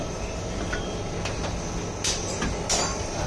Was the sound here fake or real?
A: real